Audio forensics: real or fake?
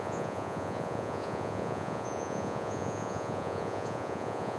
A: fake